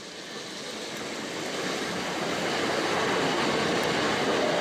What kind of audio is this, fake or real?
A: real